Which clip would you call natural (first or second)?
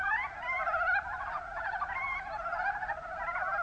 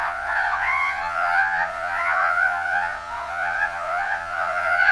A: first